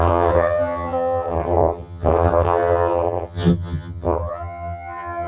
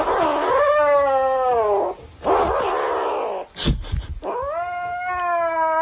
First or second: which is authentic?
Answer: second